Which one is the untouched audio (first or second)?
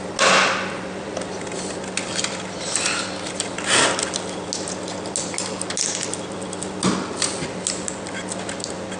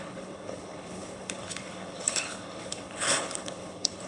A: first